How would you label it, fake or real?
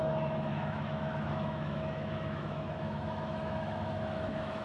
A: fake